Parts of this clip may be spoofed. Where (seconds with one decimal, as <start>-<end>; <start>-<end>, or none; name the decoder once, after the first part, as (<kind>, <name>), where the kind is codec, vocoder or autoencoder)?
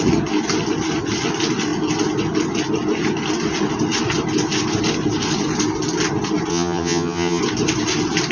6.5-7.4 (vocoder, HiFi-GAN)